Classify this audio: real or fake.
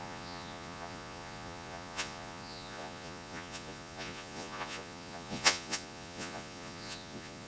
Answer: fake